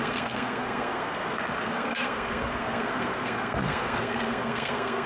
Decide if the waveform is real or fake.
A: fake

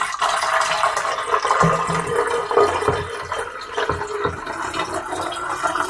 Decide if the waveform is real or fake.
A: real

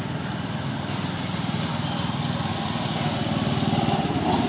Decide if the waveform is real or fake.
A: real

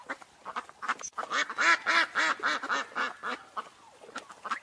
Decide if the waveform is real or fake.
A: real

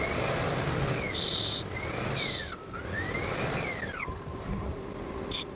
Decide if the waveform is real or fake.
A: real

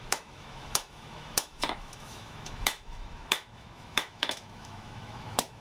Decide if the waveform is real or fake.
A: fake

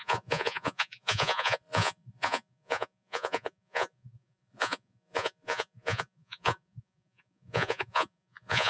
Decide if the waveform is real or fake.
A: fake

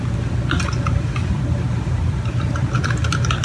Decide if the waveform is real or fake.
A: real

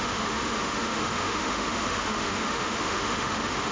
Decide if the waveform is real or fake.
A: fake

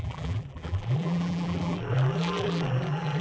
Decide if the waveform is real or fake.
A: fake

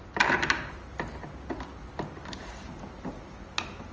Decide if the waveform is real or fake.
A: real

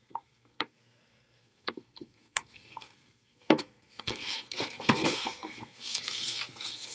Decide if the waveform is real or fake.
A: fake